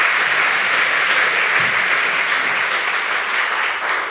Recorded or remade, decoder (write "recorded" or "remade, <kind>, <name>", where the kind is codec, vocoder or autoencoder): recorded